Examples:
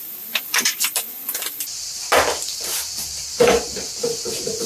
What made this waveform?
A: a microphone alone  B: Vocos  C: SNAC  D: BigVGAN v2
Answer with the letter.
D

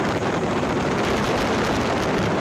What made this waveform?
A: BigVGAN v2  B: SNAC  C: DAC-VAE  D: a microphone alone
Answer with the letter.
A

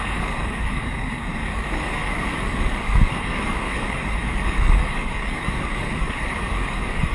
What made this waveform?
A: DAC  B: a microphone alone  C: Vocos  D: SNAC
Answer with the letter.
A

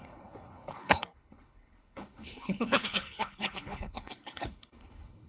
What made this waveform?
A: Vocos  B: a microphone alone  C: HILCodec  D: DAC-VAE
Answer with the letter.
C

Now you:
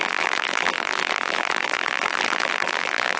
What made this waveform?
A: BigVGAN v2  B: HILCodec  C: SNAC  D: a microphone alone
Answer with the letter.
A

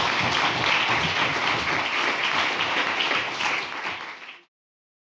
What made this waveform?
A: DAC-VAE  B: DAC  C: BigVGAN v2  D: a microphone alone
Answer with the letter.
D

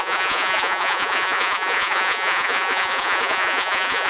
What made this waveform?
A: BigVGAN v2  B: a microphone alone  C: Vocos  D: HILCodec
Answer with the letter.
C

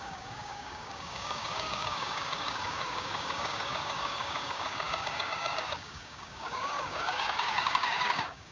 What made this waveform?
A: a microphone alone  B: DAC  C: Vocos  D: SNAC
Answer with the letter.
B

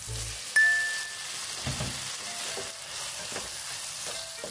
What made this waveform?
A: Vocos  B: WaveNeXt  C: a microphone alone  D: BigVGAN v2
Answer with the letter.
C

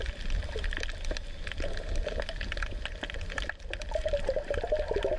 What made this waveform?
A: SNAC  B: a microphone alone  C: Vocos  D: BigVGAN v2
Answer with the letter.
B